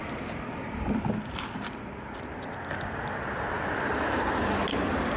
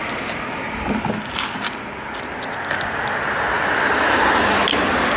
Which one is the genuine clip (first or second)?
second